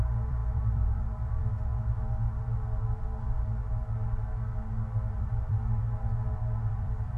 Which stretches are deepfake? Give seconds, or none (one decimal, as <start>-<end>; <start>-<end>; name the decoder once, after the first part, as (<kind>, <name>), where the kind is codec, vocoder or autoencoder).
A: 0.0-1.7 (vocoder, BigVGAN v2); 5.1-5.6; 6.3-7.2